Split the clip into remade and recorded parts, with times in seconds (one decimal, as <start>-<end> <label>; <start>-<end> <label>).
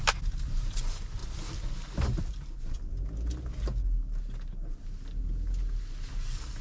0.0-6.6 recorded